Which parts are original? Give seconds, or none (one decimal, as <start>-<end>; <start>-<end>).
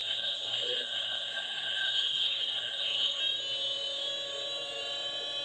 3.2-5.4